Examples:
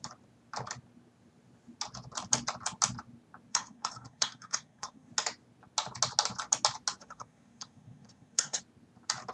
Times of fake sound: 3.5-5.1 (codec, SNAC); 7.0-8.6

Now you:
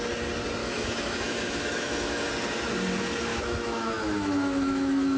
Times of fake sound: 0.6-2.3 (autoencoder, DAC-VAE); 3.3-5.2

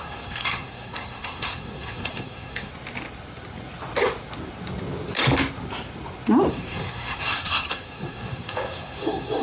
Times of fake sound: 0.0-2.7 (codec, SNAC); 6.5-9.4

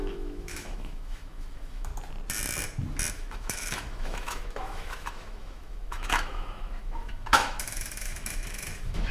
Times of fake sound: 0.0-1.9 (autoencoder, DAC-VAE); 3.1-9.1

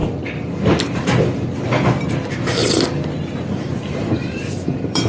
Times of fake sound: 2.1-2.6 (vocoder, BigVGAN v2); 3.5-5.1

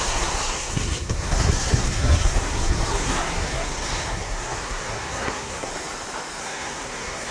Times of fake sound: 0.0-5.7 (codec, SNAC); 6.4-7.3

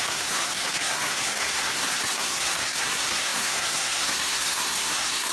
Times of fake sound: 0.0-5.3 (codec, SNAC)